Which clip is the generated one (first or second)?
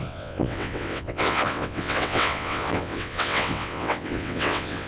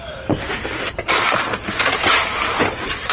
first